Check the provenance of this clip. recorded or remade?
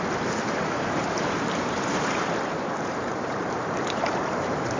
remade